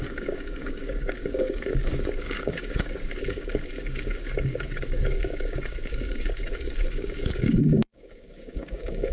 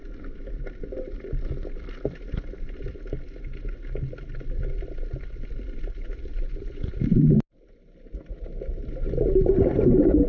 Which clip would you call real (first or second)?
second